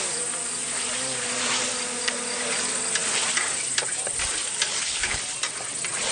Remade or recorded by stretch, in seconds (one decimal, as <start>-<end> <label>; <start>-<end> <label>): 0.0-4.7 recorded; 4.7-5.2 remade; 5.2-6.1 recorded